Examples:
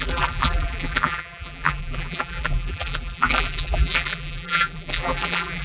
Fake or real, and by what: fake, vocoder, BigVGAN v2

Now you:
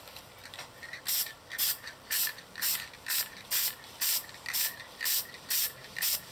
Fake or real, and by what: fake, vocoder, BigVGAN v2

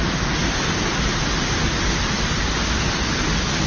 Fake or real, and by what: real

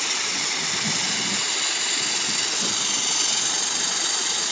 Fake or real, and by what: real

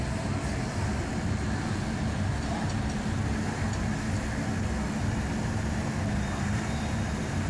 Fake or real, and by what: real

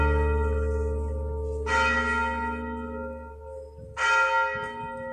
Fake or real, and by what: real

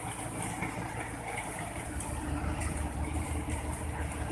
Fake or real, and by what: fake, vocoder, BigVGAN v2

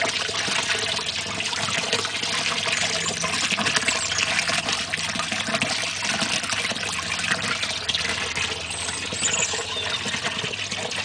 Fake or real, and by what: real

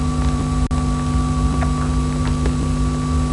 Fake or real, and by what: real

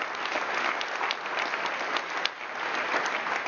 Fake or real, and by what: real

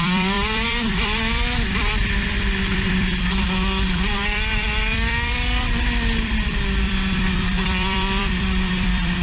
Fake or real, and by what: fake, vocoder, BigVGAN v2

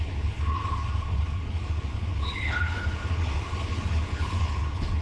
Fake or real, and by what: fake, codec, HILCodec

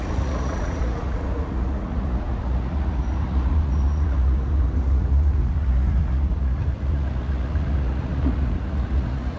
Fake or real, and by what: fake, vocoder, Vocos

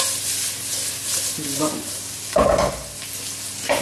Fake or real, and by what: real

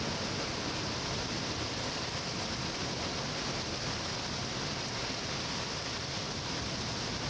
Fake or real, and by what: real